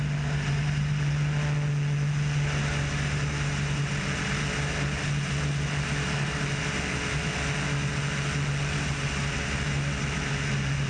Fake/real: real